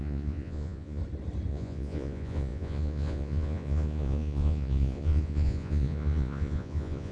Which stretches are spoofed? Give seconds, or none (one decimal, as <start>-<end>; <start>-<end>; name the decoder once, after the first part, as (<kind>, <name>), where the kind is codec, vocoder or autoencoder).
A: 0.0-1.0 (vocoder, Vocos); 1.5-7.1